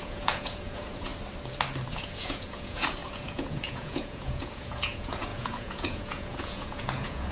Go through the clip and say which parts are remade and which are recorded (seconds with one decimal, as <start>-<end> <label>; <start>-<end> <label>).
0.0-1.1 remade; 1.1-1.9 recorded; 1.9-7.3 remade